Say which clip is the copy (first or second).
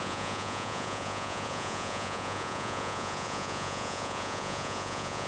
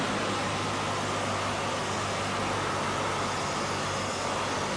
first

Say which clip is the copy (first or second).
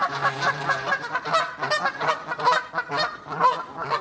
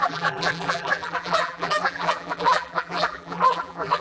second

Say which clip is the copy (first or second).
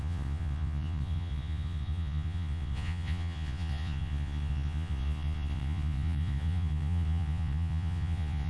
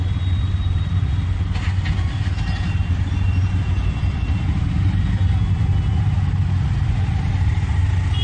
first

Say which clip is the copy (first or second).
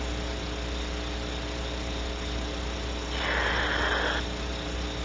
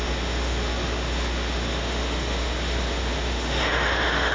second